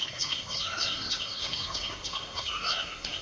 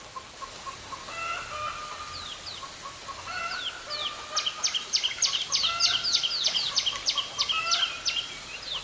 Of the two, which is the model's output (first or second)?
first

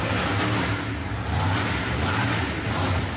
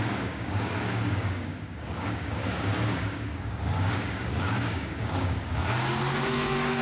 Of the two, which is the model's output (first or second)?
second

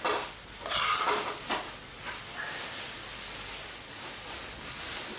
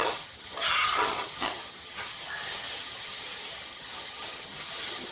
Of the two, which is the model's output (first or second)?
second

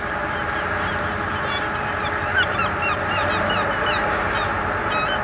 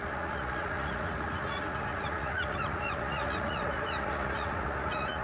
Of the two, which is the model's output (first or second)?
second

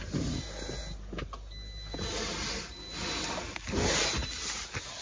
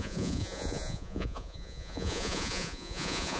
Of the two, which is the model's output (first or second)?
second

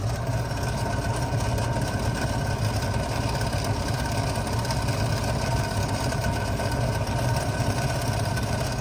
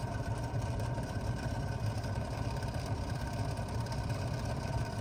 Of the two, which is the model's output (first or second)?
second